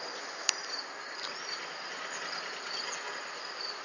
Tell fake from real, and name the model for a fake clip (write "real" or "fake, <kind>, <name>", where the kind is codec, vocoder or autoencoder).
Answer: real